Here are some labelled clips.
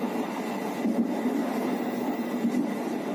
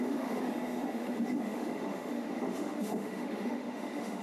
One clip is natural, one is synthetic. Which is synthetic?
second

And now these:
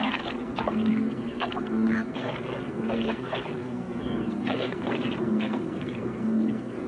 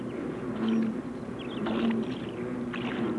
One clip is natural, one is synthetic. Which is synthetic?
first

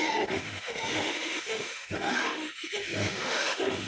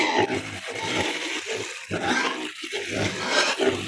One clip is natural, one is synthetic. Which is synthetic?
first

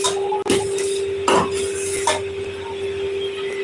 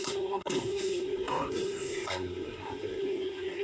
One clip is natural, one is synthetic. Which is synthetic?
second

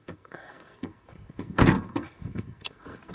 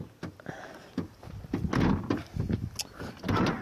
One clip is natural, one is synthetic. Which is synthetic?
first